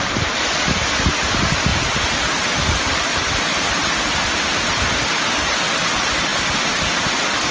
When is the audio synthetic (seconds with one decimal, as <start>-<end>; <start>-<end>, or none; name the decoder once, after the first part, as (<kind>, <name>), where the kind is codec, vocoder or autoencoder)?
none